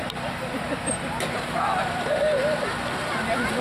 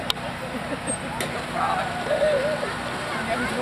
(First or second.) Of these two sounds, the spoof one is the first